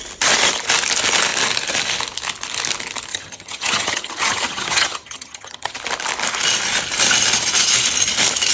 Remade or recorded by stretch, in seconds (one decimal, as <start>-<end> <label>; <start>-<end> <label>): 0.0-3.1 recorded; 3.1-5.8 remade; 5.8-8.5 recorded